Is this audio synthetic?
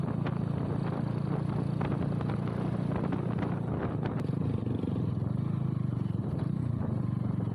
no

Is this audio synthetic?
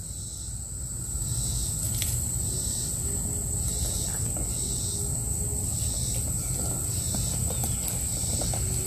no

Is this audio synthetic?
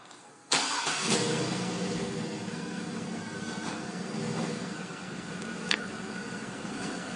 yes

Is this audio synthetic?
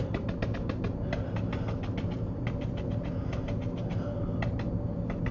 no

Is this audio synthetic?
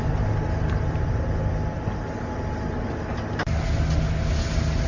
no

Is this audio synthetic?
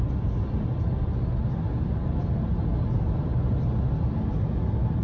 no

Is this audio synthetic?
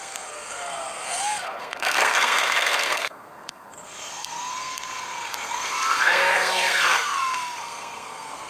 yes